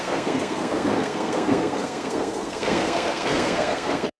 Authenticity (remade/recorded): remade